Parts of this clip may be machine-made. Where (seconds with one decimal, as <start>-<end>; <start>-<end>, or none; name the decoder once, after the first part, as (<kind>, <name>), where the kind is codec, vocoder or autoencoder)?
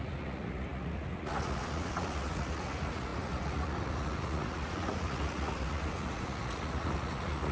0.0-7.5 (vocoder, Vocos)